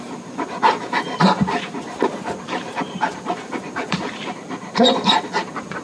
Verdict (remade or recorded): remade